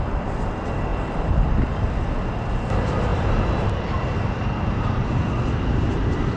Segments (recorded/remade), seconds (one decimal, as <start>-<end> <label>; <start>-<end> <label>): 0.0-6.4 recorded